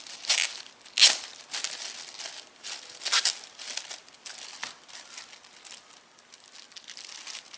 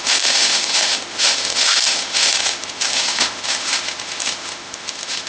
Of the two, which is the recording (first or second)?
first